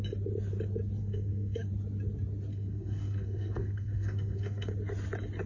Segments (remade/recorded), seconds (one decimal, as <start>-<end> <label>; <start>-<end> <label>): 0.0-1.0 recorded; 1.0-1.7 remade; 1.7-2.5 recorded; 2.5-4.7 remade; 4.7-5.5 recorded